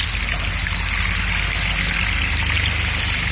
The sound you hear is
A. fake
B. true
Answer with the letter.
B